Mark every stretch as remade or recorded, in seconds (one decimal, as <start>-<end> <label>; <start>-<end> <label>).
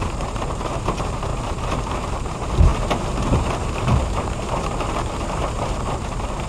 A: 0.0-6.5 remade